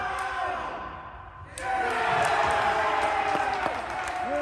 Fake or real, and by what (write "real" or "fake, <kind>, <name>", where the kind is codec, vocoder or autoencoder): real